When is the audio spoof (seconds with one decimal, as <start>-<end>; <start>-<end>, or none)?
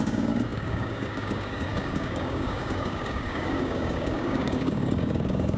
0.0-5.6